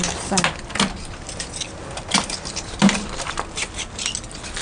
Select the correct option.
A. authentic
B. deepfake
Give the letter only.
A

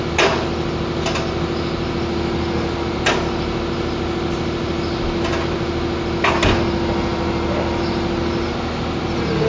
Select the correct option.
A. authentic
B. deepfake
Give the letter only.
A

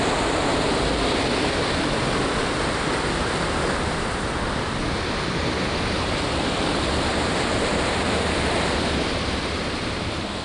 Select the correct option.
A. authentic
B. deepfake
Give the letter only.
A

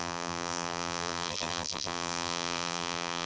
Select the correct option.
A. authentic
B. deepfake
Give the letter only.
B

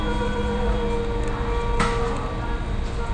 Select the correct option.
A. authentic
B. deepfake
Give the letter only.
A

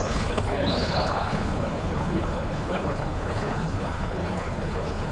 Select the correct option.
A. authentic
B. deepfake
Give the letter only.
B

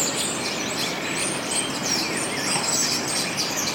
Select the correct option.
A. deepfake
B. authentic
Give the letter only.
B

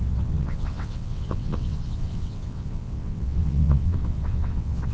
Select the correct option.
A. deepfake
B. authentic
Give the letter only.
A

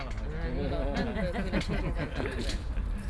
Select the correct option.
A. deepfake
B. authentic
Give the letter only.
B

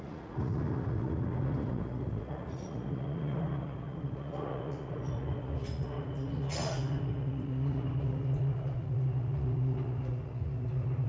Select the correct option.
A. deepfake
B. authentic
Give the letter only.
A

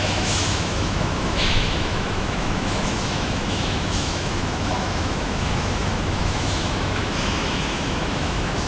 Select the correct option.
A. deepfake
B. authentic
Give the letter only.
A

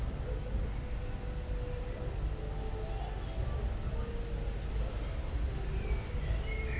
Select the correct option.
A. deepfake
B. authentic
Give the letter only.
B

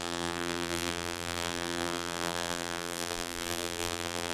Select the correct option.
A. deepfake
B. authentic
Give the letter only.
A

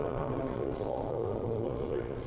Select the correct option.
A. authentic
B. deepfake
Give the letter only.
B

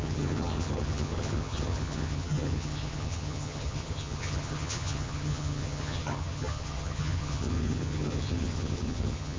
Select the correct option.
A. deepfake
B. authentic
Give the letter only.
A